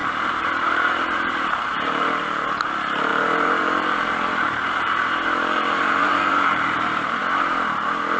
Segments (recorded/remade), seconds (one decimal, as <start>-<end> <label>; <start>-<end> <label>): 0.0-2.6 remade; 2.6-3.1 recorded; 3.1-7.2 remade; 7.2-8.2 recorded